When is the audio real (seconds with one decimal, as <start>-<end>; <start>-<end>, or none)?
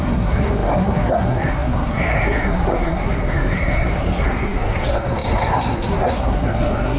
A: none